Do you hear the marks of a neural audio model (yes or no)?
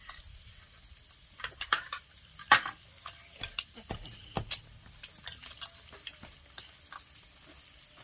yes